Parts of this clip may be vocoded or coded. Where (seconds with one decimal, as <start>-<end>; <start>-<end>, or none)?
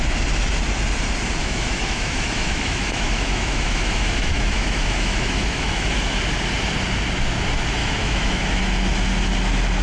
1.4-5.9; 7.8-8.6